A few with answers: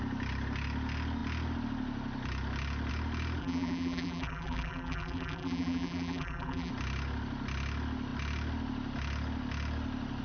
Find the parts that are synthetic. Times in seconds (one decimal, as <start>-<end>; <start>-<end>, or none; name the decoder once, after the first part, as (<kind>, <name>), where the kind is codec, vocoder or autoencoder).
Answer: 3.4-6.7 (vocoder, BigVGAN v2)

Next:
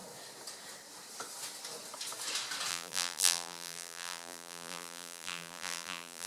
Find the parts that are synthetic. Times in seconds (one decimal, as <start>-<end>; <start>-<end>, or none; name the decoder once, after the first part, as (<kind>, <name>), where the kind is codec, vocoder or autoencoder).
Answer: 2.7-6.3 (vocoder, BigVGAN v2)

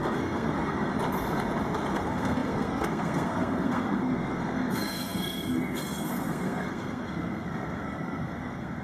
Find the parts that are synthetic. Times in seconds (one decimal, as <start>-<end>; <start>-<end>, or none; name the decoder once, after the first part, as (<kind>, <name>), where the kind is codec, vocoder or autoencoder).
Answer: 0.0-0.9 (codec, SNAC); 1.9-8.8

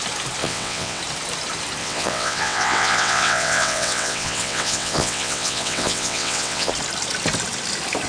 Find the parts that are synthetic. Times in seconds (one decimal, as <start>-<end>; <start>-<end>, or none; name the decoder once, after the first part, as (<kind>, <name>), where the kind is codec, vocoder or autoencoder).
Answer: 0.4-1.0 (vocoder, WaveNeXt); 1.8-6.7